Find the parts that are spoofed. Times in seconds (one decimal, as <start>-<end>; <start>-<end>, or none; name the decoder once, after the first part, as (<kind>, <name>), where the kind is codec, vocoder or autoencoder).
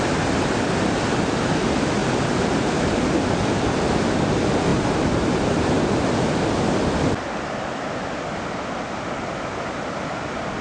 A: none